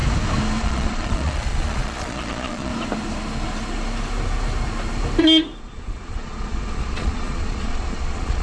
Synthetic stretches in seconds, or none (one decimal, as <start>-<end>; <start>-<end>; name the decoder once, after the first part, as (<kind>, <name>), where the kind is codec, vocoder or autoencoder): 0.6-2.7 (vocoder, Vocos); 5.6-8.4